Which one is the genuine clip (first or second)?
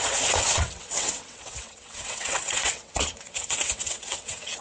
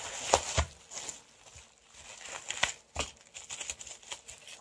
second